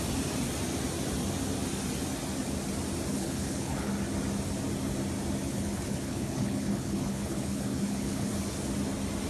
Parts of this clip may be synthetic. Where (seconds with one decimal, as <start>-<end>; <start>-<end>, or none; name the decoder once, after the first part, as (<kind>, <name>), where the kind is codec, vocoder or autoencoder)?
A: 3.1-3.9 (codec, HILCodec); 5.4-8.3